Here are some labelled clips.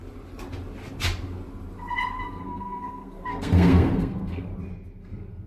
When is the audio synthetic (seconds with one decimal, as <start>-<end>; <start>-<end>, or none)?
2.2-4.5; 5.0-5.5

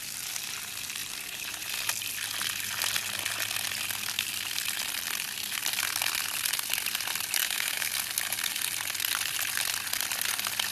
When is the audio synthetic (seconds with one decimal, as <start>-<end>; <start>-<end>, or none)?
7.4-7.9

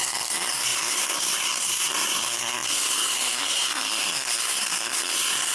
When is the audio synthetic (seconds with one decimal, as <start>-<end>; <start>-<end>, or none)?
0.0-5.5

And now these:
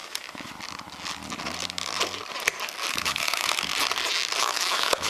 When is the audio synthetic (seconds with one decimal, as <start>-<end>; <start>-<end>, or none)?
2.9-3.7; 4.4-5.1